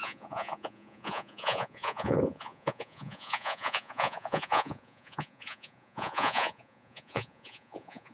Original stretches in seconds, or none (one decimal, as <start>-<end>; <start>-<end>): none

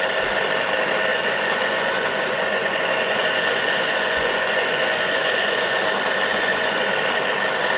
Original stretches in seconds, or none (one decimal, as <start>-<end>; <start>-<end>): 0.0-1.1; 5.8-6.3; 6.9-7.8

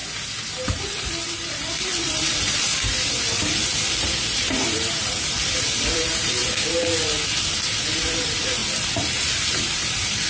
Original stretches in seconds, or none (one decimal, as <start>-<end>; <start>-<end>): 0.0-0.8; 6.4-7.4

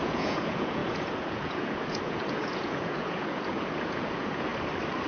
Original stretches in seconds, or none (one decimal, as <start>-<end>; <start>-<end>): 4.5-5.1

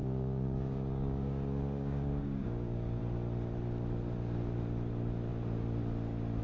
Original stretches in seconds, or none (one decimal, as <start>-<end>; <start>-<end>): 3.0-6.4

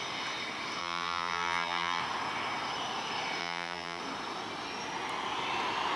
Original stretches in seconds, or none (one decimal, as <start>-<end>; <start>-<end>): 0.0-0.8; 2.0-3.4; 4.0-6.0

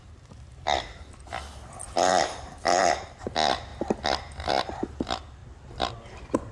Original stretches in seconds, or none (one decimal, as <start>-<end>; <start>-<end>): 0.0-2.1; 2.8-5.4; 5.9-6.5